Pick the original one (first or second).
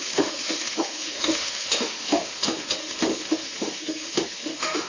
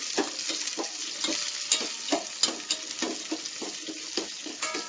second